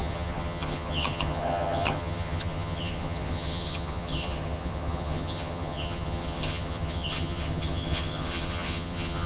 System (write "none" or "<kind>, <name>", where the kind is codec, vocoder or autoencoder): vocoder, HiFi-GAN